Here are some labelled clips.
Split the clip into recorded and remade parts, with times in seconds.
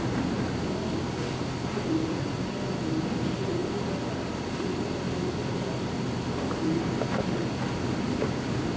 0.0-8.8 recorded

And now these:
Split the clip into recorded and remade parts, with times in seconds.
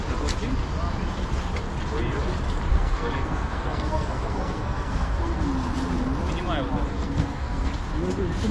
0.0-2.7 recorded; 2.7-5.5 remade; 5.5-6.9 recorded; 6.9-7.7 remade; 7.7-8.5 recorded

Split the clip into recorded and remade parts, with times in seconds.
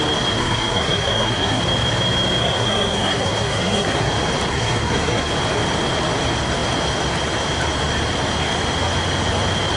0.0-0.4 recorded; 0.4-1.6 remade; 1.6-2.4 recorded; 2.4-4.1 remade; 4.1-4.5 recorded; 4.5-5.3 remade; 5.3-9.8 recorded